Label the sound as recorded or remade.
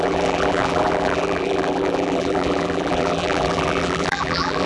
remade